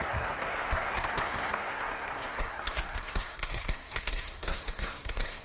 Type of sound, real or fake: fake